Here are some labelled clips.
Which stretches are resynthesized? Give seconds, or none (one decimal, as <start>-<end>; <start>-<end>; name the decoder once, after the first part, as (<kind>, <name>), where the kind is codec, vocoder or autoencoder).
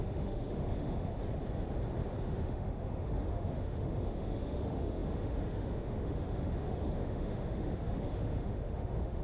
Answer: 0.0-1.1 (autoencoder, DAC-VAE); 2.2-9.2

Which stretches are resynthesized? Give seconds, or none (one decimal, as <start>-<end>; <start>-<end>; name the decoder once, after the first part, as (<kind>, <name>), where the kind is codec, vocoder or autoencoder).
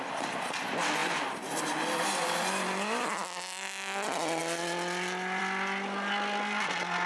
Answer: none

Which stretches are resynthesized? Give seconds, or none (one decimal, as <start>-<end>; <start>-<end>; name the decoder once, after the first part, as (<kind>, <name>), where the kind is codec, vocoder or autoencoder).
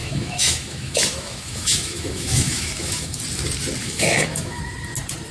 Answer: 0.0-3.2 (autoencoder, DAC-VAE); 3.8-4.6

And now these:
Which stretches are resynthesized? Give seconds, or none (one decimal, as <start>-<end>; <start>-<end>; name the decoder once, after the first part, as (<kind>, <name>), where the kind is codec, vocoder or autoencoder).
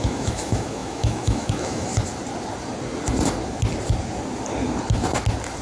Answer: 0.0-1.9 (autoencoder, DAC-VAE)